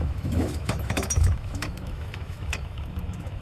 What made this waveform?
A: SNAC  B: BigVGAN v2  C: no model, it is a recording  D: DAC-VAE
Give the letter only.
D